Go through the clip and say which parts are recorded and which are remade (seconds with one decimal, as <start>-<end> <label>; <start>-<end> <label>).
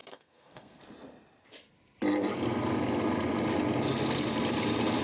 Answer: 0.0-0.8 remade; 0.8-5.0 recorded